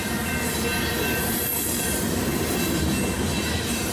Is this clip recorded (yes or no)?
no